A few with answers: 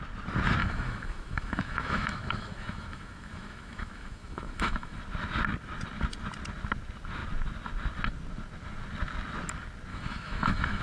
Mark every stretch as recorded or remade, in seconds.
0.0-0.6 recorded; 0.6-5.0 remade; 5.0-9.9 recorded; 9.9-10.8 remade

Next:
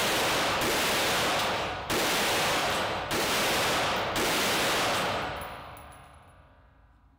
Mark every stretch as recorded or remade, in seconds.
0.0-2.6 recorded; 2.6-3.3 remade; 3.3-7.2 recorded

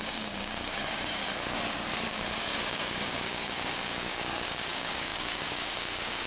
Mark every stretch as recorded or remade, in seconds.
0.0-1.2 remade; 1.2-2.1 recorded; 2.1-6.3 remade

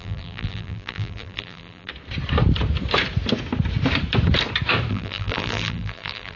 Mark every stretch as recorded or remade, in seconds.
0.0-1.9 remade; 1.9-4.9 recorded; 4.9-6.4 remade

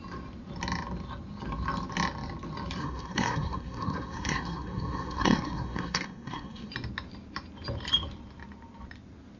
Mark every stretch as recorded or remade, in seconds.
0.0-2.8 recorded; 2.8-6.7 remade; 6.7-9.4 recorded

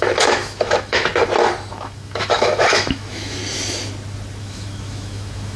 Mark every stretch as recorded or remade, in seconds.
0.0-1.1 remade; 1.1-1.7 recorded; 1.7-3.4 remade; 3.4-4.4 recorded; 4.4-5.6 remade

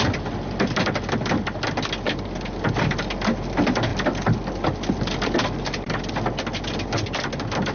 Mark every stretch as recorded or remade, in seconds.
0.0-7.7 recorded